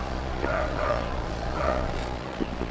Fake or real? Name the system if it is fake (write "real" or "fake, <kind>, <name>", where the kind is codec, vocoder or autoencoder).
fake, vocoder, Vocos